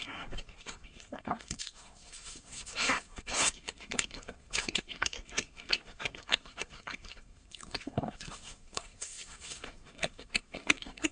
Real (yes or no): no